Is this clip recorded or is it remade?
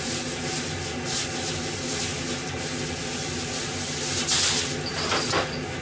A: recorded